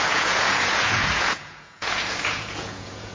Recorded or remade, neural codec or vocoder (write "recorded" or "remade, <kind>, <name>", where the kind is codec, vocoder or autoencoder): remade, vocoder, Vocos